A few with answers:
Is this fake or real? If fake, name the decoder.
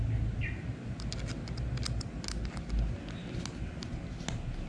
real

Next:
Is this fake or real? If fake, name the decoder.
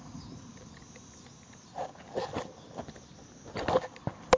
real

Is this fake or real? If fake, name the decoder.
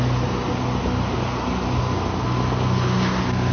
real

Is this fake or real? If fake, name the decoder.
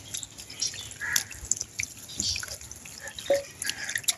real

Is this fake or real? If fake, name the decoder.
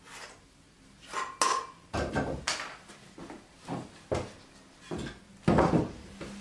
real